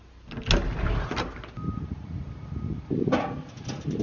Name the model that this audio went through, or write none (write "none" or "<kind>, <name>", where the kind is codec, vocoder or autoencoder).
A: none